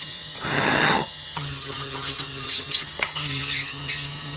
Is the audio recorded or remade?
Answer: remade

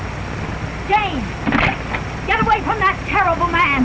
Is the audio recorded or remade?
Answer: recorded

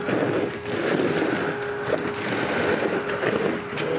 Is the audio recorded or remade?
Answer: recorded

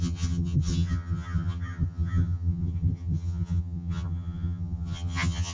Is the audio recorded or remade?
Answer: remade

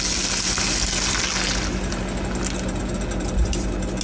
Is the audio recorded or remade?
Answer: recorded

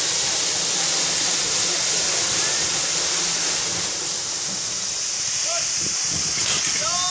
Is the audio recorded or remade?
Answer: recorded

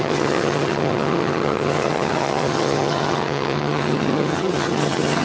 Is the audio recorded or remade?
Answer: remade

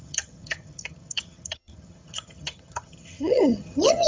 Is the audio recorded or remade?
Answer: remade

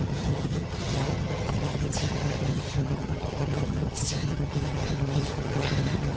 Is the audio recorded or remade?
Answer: remade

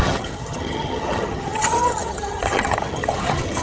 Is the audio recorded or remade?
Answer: remade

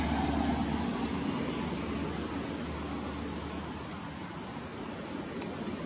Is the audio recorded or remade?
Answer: recorded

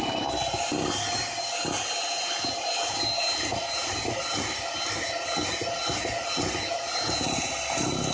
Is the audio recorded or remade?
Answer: recorded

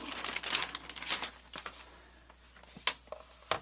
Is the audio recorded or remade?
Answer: recorded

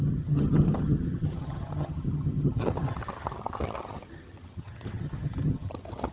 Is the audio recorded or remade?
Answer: remade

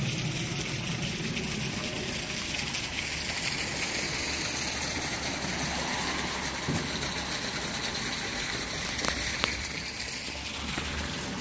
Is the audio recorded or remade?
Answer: recorded